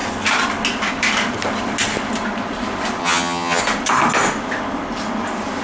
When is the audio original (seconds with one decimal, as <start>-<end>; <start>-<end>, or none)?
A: 0.0-3.0; 3.6-5.6